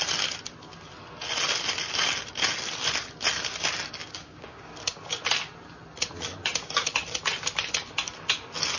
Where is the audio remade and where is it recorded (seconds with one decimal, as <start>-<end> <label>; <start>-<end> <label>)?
0.0-4.0 recorded; 4.0-4.7 remade; 4.7-8.8 recorded